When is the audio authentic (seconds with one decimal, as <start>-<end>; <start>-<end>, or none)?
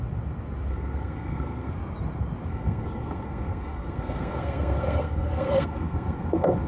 0.0-0.7; 1.7-2.5